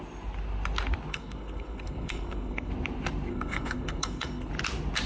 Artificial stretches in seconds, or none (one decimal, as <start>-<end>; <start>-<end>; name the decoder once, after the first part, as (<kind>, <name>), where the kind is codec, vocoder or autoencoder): 1.1-2.7 (codec, SNAC); 3.3-4.5